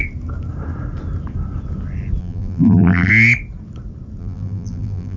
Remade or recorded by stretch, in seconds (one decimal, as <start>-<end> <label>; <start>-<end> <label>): 0.0-2.2 recorded; 2.2-3.1 remade; 3.1-4.2 recorded; 4.2-5.2 remade